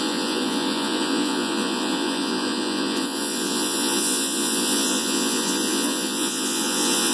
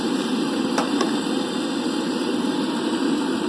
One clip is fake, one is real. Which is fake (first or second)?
first